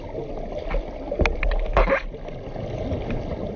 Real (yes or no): yes